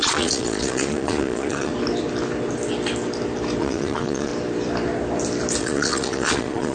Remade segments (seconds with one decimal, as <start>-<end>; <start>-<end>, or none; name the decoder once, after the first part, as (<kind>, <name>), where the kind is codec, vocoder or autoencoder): 0.0-1.7 (vocoder, Vocos); 3.6-4.3; 5.6-6.7